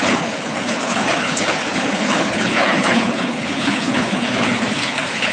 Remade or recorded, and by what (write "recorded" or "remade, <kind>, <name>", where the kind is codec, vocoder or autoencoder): remade, codec, HILCodec